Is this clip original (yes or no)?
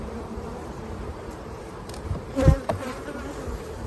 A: no